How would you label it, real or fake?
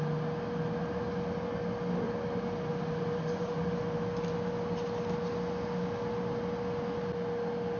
real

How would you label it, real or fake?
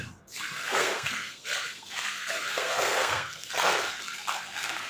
fake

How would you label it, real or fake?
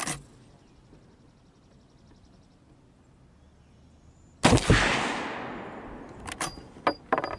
real